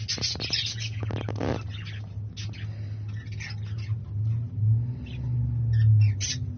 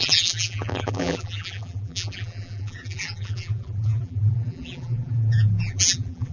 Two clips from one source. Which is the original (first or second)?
first